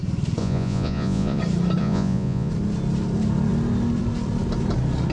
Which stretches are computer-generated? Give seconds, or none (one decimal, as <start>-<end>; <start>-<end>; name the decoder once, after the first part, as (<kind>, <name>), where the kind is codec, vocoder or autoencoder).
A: 0.4-1.4 (vocoder, Vocos); 1.8-2.5

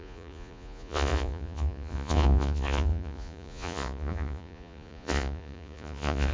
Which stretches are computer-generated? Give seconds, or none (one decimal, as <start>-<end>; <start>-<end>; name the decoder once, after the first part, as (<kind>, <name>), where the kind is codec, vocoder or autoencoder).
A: 0.0-6.3 (vocoder, Vocos)

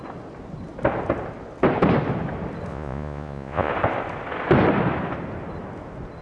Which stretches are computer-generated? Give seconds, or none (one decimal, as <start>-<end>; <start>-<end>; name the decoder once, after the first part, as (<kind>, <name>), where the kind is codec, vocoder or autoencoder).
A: 2.7-3.7 (vocoder, Vocos)